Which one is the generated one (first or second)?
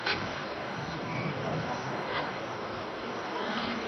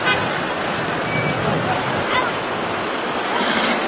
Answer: first